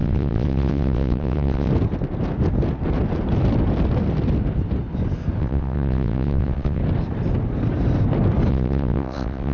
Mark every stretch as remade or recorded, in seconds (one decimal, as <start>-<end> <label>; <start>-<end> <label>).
0.0-1.7 remade; 1.7-5.4 recorded; 5.4-6.8 remade; 6.8-8.5 recorded; 8.5-9.5 remade